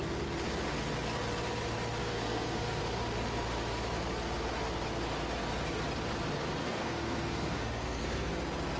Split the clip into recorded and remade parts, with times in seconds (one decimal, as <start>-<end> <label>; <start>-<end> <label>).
0.0-2.0 recorded; 2.0-2.8 remade; 2.8-6.6 recorded; 6.6-8.3 remade; 8.3-8.8 recorded